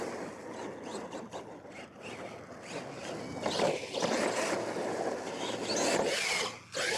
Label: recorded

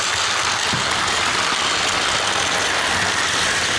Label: recorded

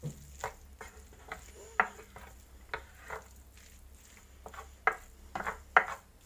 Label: recorded